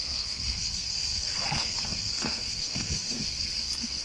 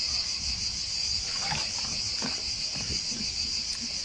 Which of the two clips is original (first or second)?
second